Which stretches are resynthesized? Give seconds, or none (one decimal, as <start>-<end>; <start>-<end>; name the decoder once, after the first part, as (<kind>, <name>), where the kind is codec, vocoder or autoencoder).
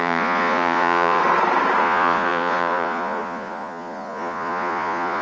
0.0-1.2 (vocoder, Vocos); 1.8-5.2